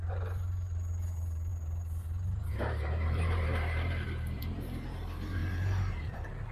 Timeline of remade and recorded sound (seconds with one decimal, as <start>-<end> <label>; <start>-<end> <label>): 0.0-1.5 remade; 1.5-2.5 recorded; 2.5-6.5 remade